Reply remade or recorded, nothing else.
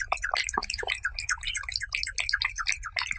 recorded